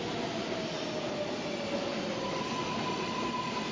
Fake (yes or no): no